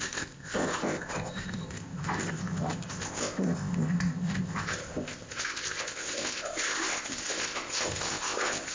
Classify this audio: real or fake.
fake